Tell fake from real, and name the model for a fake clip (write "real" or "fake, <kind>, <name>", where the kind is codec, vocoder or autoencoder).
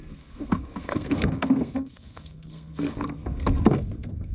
fake, codec, SNAC